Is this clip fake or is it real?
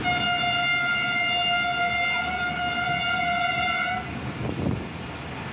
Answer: real